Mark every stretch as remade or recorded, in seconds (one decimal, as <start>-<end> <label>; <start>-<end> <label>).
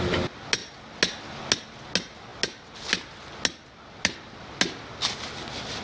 0.0-5.8 recorded